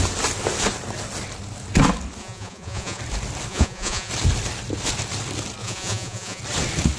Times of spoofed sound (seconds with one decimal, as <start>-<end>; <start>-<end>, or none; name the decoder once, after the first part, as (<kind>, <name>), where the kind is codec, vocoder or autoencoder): 2.2-3.0 (vocoder, Vocos); 3.5-4.1; 5.6-6.4